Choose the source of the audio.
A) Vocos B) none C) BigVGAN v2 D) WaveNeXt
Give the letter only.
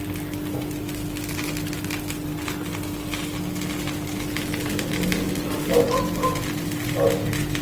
B